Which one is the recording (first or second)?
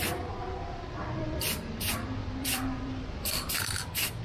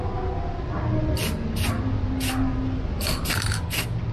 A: second